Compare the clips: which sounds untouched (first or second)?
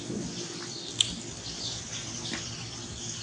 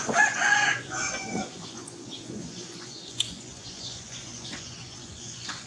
first